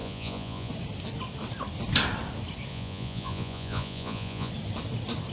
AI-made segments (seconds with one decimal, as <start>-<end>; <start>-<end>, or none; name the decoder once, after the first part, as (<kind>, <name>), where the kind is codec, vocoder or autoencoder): 0.0-0.7 (vocoder, Vocos); 2.7-4.5